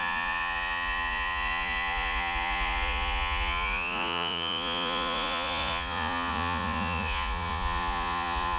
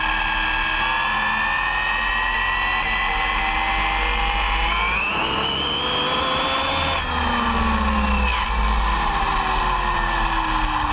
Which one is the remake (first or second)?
first